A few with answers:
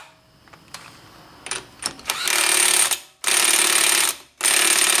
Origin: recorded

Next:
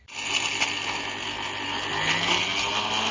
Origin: recorded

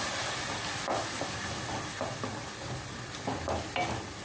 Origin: recorded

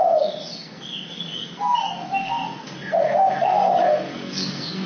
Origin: remade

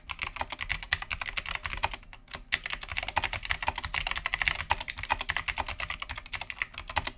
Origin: recorded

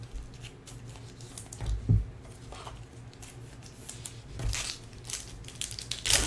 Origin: recorded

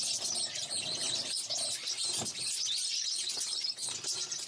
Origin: recorded